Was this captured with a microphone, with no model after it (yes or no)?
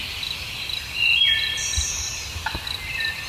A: yes